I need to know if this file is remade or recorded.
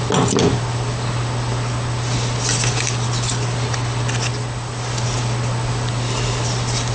recorded